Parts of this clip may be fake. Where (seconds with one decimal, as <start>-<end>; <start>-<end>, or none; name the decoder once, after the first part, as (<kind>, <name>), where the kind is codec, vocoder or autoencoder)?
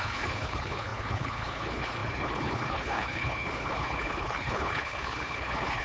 0.0-5.8 (codec, HILCodec)